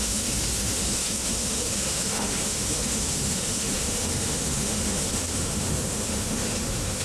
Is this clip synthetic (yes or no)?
yes